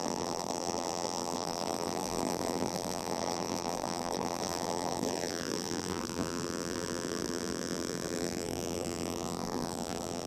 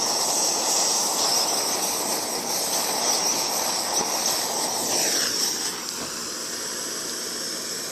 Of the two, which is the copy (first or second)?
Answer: first